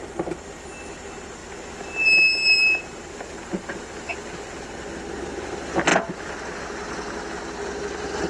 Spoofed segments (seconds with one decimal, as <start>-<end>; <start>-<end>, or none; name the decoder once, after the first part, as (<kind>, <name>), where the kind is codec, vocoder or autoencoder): none